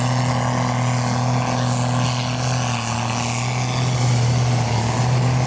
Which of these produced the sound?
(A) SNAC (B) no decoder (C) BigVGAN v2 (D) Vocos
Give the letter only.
B